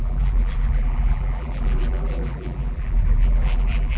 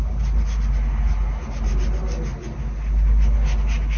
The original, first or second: second